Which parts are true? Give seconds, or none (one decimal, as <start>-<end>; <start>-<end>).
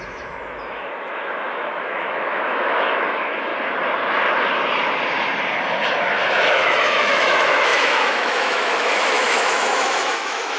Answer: 3.5-6.4